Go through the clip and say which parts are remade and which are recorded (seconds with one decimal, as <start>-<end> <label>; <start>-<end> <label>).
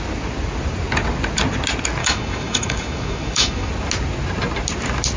0.0-2.0 recorded; 2.0-3.7 remade; 3.7-5.2 recorded